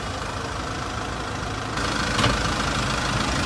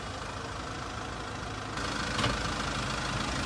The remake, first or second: first